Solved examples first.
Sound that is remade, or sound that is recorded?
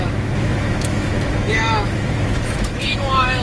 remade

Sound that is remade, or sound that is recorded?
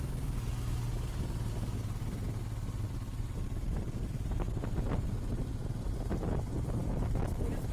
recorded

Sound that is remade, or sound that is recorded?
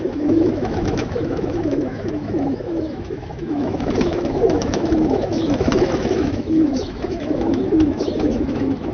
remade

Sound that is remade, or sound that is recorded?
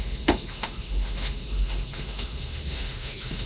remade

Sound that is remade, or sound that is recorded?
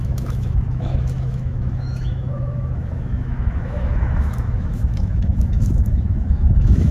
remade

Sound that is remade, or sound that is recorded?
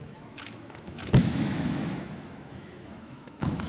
remade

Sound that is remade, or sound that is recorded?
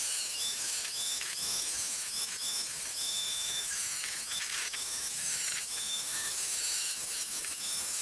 remade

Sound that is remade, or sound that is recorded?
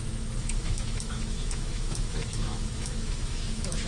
remade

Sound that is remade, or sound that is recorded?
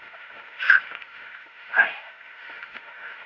remade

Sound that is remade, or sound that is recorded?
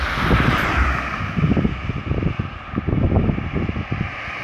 recorded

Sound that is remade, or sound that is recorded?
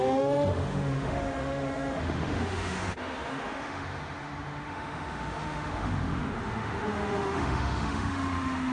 remade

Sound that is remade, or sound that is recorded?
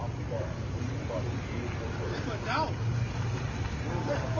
recorded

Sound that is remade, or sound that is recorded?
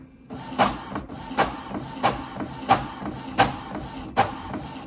recorded